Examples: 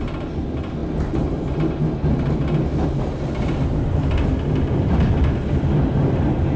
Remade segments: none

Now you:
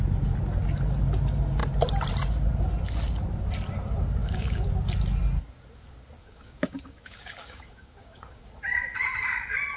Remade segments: 4.2-4.7 (codec, DAC); 6.2-8.5

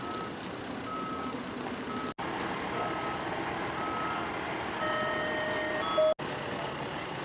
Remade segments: 0.9-1.4 (codec, DAC)

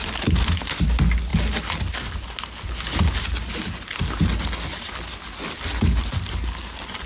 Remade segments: none

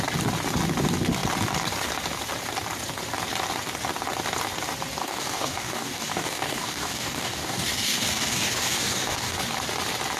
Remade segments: 5.0-9.4 (codec, DAC)

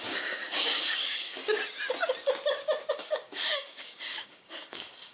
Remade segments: 0.0-1.4 (codec, DAC); 2.9-5.1

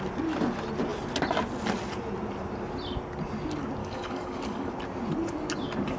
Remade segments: 3.8-4.7 (codec, DAC)

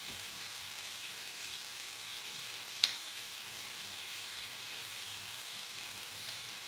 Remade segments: 0.0-6.7 (codec, DAC)